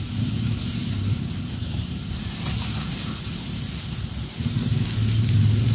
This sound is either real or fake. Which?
real